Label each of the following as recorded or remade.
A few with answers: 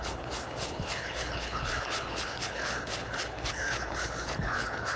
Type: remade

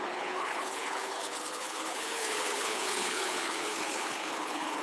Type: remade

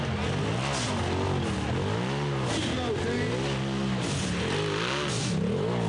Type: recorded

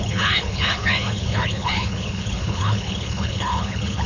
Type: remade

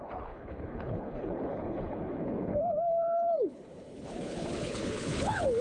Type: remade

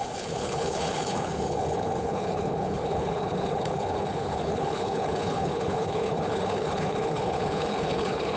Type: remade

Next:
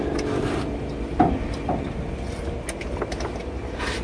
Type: recorded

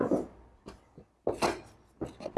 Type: recorded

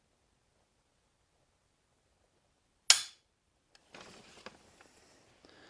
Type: recorded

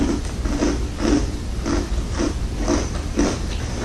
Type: recorded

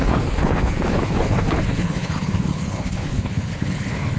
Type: remade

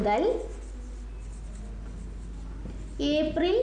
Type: recorded